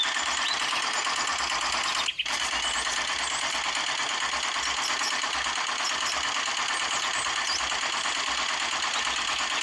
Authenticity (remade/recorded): recorded